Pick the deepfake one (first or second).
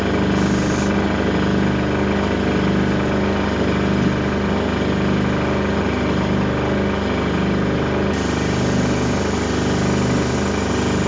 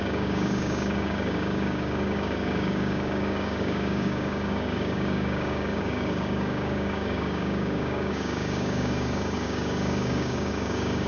second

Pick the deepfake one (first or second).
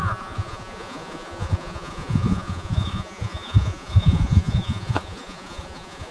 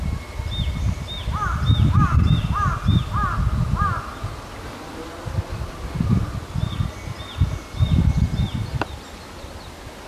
first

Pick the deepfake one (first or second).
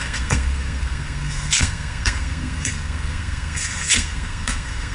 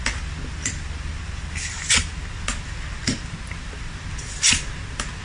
first